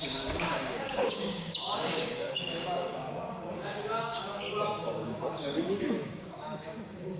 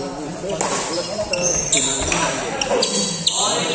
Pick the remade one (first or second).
first